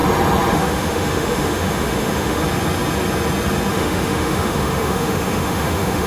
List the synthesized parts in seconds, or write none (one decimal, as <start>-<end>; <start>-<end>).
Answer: 0.5-2.4; 3.7-6.1